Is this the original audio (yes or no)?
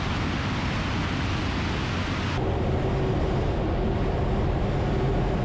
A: yes